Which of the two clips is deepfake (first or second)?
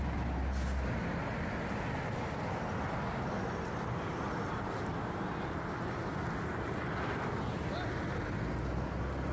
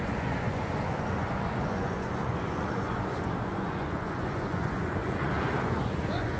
second